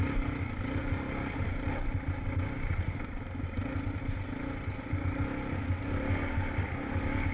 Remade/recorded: recorded